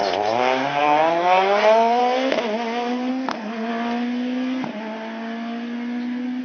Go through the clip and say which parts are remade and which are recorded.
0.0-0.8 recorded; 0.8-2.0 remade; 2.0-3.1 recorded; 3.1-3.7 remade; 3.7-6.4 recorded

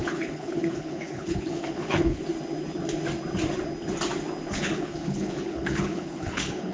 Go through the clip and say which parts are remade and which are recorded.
0.0-2.2 remade; 2.2-4.5 recorded; 4.5-6.7 remade